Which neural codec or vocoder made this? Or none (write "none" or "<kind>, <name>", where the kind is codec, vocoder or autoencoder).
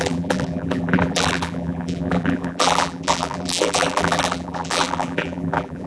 vocoder, BigVGAN v2